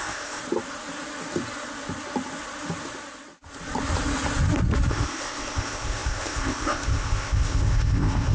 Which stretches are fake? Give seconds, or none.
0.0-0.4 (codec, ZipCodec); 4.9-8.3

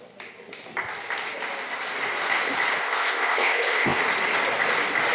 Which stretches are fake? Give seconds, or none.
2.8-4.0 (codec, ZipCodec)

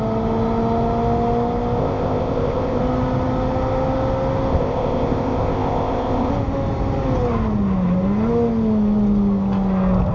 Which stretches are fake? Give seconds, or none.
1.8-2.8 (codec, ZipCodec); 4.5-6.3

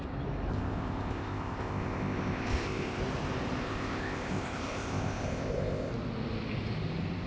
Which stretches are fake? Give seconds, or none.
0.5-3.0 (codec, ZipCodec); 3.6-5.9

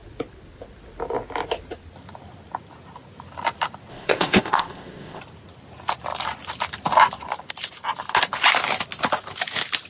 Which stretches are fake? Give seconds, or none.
3.9-5.2 (codec, ZipCodec)

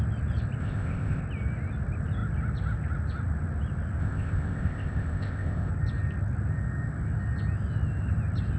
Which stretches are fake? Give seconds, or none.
0.6-1.2 (codec, ZipCodec); 4.0-5.7

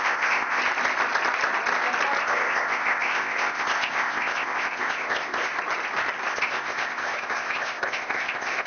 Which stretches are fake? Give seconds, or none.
0.0-0.6 (codec, ZipCodec); 2.2-5.5; 6.3-8.7

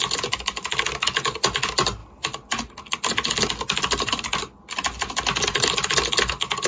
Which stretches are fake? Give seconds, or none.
none